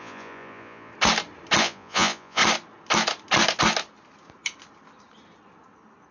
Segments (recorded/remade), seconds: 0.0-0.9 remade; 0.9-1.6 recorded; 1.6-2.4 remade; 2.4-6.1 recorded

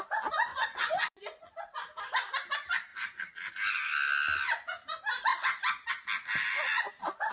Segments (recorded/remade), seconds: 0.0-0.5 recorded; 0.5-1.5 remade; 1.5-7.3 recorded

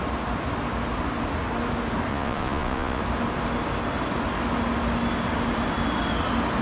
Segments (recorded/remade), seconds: 0.0-2.1 recorded; 2.1-3.0 remade; 3.0-6.6 recorded

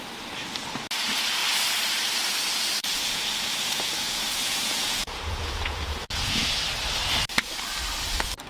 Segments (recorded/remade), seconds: 0.0-2.8 recorded; 2.8-6.5 remade; 6.5-8.5 recorded

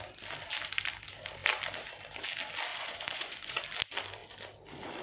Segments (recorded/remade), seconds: 0.0-2.7 recorded; 2.7-3.6 remade; 3.6-5.0 recorded